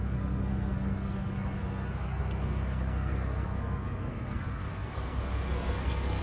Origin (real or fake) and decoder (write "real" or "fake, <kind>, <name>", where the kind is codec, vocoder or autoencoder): fake, codec, SNAC